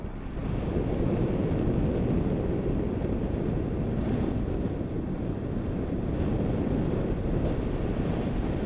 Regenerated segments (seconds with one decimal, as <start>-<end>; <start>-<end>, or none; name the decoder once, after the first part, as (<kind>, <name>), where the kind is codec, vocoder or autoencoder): none